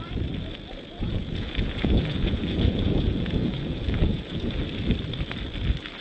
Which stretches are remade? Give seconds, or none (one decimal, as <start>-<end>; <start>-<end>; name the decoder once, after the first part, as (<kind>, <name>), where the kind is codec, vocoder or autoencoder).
1.0-4.6 (vocoder, Vocos)

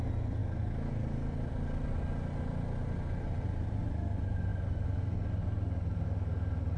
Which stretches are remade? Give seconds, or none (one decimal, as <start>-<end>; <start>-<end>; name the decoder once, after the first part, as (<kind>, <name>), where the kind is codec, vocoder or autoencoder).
none